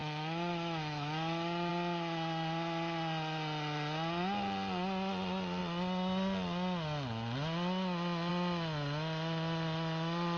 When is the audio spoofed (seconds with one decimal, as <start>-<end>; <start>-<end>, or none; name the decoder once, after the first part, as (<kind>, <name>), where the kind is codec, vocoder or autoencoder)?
0.0-1.7 (autoencoder, DAC-VAE)